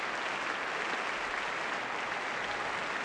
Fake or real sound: real